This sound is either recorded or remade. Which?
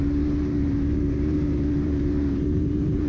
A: remade